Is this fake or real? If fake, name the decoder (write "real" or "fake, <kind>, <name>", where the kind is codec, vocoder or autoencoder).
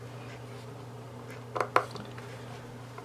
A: real